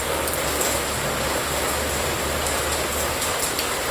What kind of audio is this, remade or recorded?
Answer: recorded